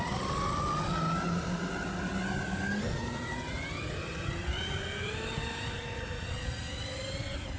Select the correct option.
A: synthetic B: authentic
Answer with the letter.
B